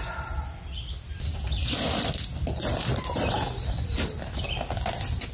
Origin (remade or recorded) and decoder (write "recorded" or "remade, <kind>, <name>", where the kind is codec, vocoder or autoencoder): recorded